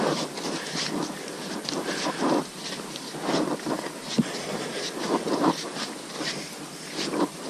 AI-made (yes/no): yes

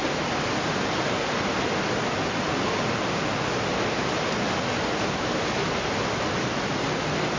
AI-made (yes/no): no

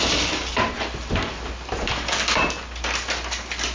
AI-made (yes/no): no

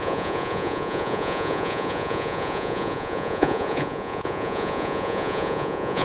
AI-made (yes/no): yes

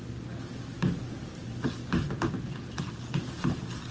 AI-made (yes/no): no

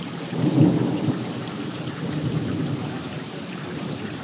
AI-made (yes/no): yes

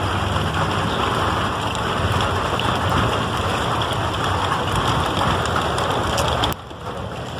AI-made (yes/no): no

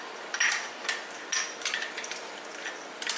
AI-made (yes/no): no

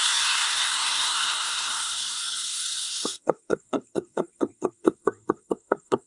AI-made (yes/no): yes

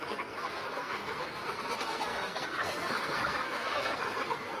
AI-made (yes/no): yes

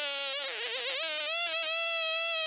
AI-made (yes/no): no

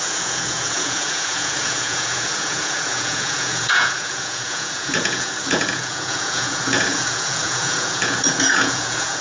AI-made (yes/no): yes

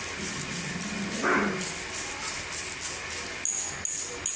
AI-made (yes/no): no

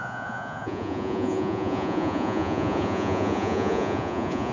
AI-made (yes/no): yes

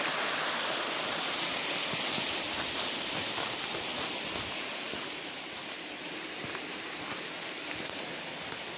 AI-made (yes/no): no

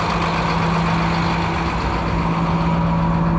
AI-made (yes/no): no